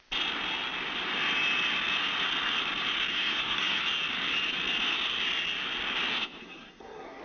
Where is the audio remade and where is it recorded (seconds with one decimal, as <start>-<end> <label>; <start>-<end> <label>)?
0.0-3.1 recorded; 3.1-3.8 remade; 3.8-6.4 recorded; 6.4-7.2 remade